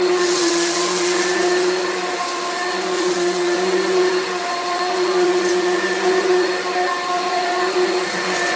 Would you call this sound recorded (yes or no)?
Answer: no